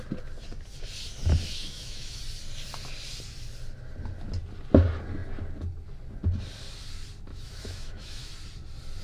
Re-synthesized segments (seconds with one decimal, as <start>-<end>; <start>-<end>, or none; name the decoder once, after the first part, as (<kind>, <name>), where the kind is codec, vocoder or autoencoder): 1.5-2.2 (autoencoder, DAC-VAE); 7.3-8.3